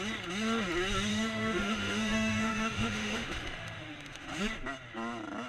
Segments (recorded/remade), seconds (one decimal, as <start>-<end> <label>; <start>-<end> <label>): 0.0-1.1 recorded; 1.1-4.4 remade; 4.4-5.5 recorded